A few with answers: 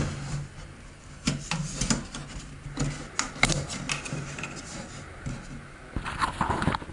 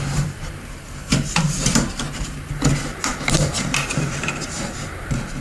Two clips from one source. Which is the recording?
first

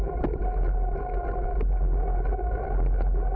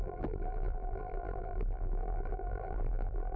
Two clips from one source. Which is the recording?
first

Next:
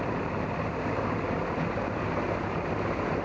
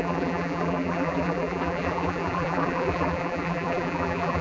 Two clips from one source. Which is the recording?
first